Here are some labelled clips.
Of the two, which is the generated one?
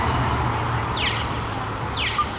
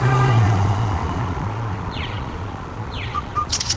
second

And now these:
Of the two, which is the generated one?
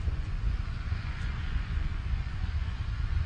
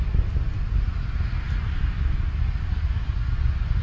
first